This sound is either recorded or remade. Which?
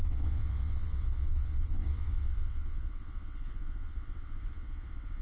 remade